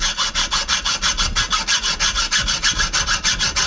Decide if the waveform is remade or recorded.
recorded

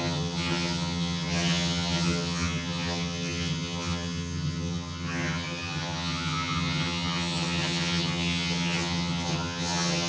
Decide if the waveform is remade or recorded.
remade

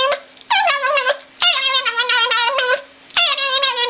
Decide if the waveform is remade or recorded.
recorded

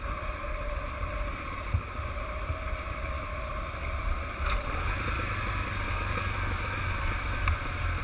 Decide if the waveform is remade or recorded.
remade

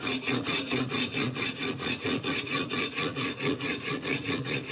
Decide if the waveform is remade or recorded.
remade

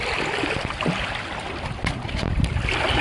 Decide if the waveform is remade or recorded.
recorded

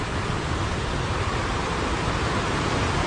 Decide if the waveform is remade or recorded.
recorded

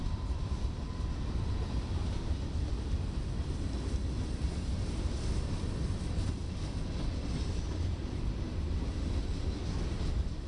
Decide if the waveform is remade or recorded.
recorded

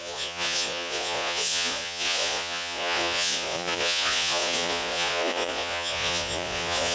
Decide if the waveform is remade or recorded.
remade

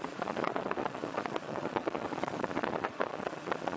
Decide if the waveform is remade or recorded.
remade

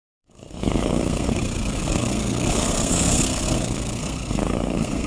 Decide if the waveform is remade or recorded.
remade